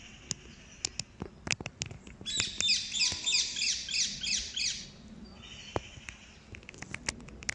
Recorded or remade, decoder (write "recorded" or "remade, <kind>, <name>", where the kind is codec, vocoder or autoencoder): recorded